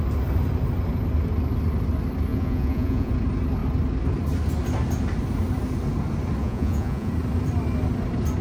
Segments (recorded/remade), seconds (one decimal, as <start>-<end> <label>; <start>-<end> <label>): 0.0-2.3 recorded; 2.3-3.1 remade; 3.1-6.4 recorded; 6.4-7.1 remade; 7.1-8.4 recorded